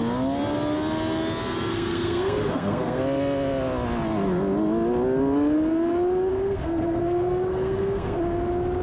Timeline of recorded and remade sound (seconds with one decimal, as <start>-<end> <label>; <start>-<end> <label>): 0.0-1.7 recorded; 1.7-3.0 remade; 3.0-6.3 recorded; 6.3-8.2 remade; 8.2-8.8 recorded